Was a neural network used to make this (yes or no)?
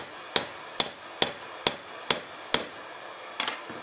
no